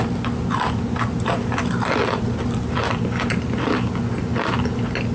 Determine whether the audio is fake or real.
fake